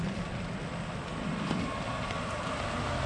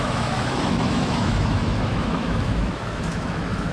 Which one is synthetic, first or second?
second